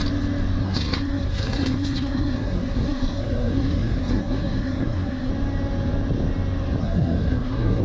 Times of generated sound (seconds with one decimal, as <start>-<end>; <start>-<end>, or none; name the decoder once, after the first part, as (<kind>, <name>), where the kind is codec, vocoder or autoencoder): 0.6-5.3 (codec, SNAC); 6.8-7.8